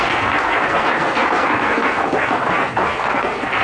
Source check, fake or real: fake